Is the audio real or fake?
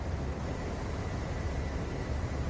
real